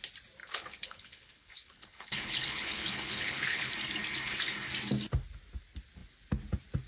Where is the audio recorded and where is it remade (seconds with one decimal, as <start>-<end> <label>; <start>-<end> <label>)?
0.0-0.4 recorded; 0.4-3.7 remade; 3.7-6.9 recorded

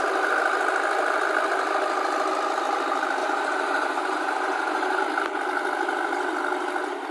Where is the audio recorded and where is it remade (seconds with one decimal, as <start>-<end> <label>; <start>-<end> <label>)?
0.0-3.2 recorded; 3.2-5.0 remade; 5.0-7.1 recorded